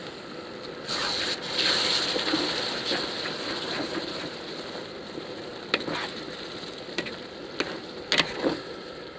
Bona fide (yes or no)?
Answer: yes